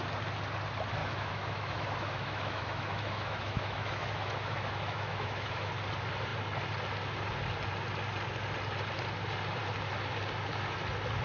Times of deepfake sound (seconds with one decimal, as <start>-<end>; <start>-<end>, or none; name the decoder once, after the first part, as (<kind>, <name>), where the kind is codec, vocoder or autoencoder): 1.0-5.7 (autoencoder, DAC-VAE)